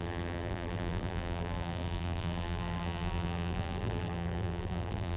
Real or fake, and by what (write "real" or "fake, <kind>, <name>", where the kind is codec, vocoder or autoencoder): fake, vocoder, BigVGAN v2